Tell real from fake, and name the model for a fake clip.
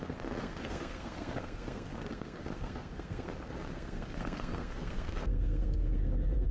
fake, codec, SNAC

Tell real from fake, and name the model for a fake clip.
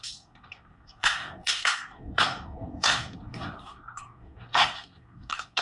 fake, codec, SNAC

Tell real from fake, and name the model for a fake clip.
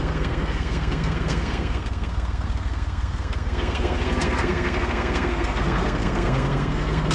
fake, codec, SNAC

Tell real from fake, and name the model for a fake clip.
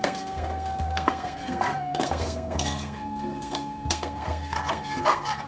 fake, codec, SNAC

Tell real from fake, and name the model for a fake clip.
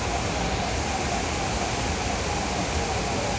real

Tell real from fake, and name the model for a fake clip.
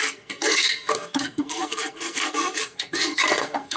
fake, codec, SNAC